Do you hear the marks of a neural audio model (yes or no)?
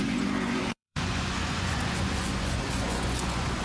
yes